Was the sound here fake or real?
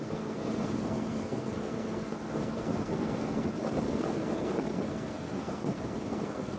fake